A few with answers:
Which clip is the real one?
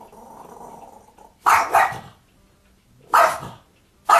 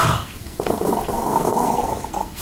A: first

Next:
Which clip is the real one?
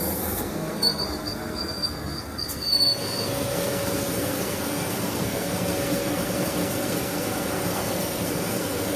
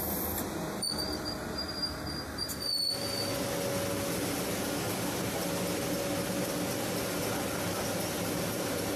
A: second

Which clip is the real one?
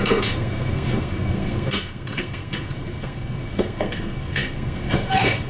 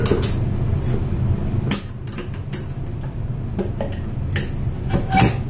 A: second